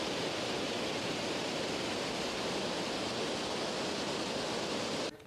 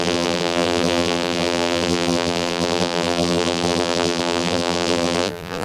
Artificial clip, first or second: second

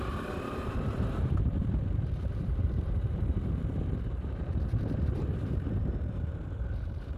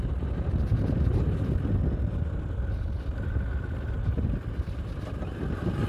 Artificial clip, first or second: first